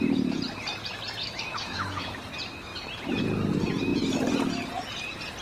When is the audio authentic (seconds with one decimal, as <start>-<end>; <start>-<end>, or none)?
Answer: 0.0-1.2; 2.2-5.4

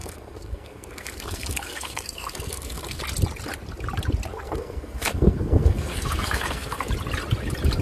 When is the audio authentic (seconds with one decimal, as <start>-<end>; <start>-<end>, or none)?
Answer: 3.0-4.3; 6.9-7.8

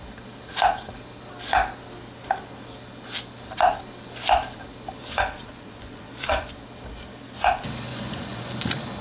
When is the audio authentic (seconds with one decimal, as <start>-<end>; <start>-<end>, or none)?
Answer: 0.0-5.0; 6.5-7.9; 8.5-9.0